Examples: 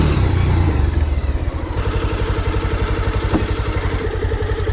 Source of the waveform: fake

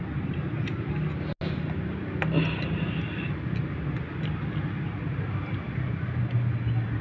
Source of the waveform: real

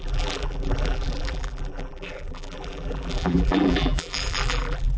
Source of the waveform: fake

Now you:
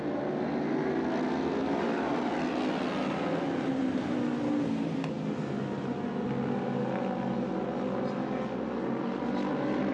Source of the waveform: real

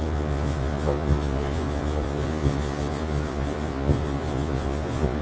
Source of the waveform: fake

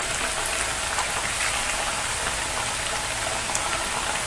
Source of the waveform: real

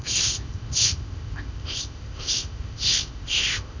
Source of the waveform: fake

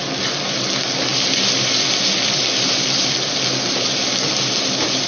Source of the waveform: real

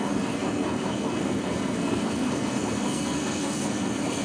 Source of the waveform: fake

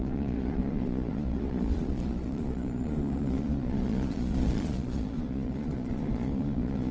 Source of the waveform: fake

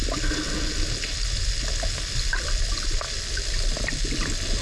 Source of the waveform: real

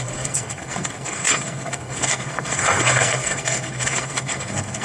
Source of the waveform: fake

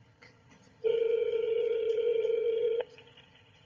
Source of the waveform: fake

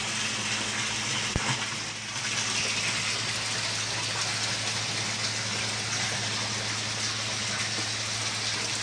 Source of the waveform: real